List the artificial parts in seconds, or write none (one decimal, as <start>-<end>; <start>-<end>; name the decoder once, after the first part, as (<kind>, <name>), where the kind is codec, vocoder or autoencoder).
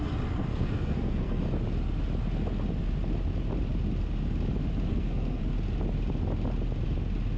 0.5-1.4 (codec, SNAC); 4.9-5.4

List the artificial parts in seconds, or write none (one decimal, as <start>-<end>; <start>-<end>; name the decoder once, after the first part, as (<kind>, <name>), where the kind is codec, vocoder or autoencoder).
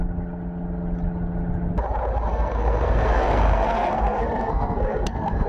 2.3-5.5 (codec, SNAC)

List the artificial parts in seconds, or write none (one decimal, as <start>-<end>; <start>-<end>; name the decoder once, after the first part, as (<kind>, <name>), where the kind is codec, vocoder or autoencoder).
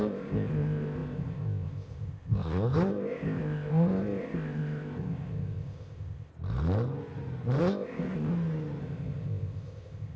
0.0-6.3 (codec, ZipCodec); 7.6-8.3; 8.8-10.2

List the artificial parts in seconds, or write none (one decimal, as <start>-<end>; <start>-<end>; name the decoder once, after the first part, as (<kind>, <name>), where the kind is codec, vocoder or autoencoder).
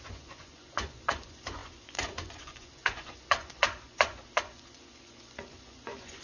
0.0-6.2 (vocoder, Vocos)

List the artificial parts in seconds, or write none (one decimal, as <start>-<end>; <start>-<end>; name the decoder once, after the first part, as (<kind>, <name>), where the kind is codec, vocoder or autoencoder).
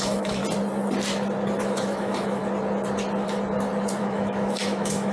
0.0-0.4 (autoencoder, DAC-VAE); 1.6-2.4; 4.0-5.1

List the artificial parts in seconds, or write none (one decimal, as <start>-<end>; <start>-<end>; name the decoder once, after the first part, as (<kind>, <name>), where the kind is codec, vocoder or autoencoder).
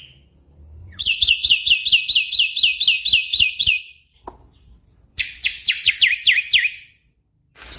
0.8-1.7 (vocoder, Vocos); 3.3-3.8; 5.1-5.9